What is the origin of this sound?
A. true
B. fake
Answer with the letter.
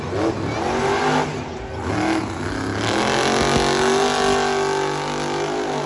A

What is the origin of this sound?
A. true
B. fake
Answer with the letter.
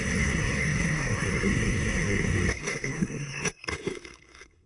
B